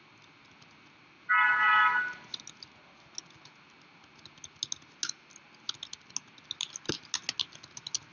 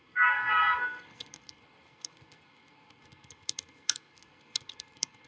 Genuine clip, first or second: first